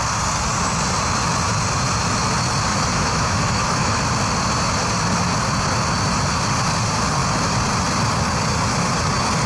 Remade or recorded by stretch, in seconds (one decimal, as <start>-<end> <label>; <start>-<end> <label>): 0.0-2.7 recorded; 2.7-4.0 remade; 4.0-9.5 recorded